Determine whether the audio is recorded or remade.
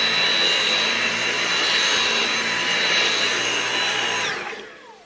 recorded